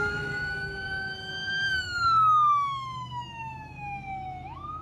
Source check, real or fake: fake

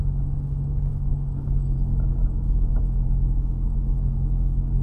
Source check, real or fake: fake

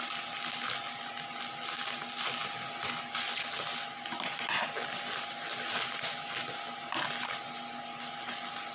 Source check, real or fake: real